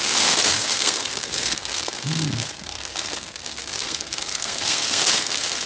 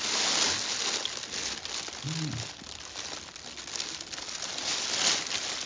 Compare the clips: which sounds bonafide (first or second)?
second